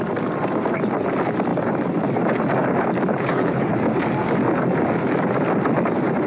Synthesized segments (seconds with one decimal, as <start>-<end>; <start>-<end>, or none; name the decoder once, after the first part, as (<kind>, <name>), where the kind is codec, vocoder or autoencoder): 3.1-3.7 (codec, HILCodec)